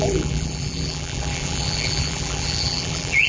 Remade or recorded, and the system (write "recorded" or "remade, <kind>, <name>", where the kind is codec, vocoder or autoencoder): remade, vocoder, BigVGAN v2